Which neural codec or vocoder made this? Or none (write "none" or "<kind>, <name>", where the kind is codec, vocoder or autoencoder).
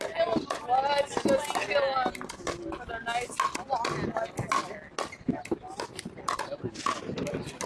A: none